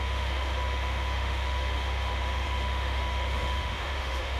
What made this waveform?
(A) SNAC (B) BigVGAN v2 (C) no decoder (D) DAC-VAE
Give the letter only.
D